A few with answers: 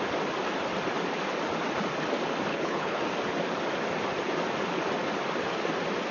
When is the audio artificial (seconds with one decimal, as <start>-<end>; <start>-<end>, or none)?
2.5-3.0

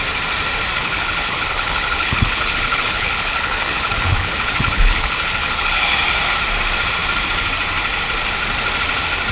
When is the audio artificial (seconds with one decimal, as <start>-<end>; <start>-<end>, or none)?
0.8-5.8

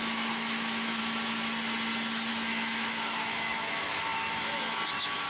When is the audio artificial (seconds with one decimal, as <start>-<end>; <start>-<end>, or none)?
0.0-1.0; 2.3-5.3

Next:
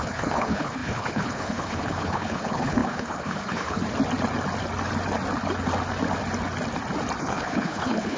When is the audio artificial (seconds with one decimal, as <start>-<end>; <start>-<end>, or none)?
0.0-3.8; 7.2-8.2

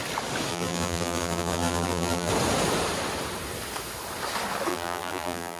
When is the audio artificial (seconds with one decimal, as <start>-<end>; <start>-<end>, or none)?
0.5-2.3; 4.7-5.6

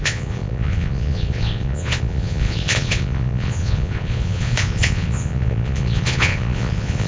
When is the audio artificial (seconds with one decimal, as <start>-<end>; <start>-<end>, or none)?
0.0-7.1

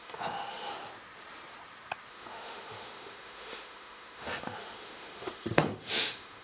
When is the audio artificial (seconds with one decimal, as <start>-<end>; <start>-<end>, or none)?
0.0-0.7; 2.1-6.4

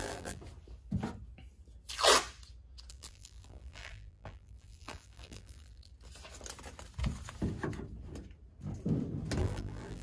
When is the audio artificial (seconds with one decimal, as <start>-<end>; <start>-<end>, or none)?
0.0-0.4; 2.9-5.9; 9.4-10.0